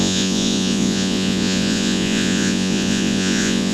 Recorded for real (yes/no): no